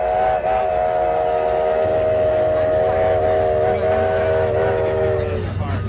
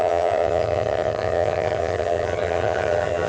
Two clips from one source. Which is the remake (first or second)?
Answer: second